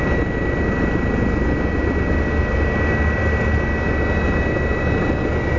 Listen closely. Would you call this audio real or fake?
real